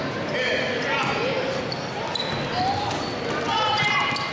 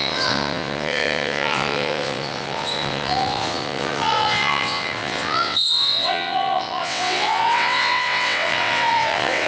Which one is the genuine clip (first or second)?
first